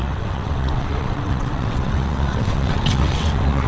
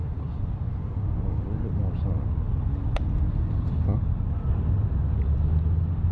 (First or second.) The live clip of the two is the second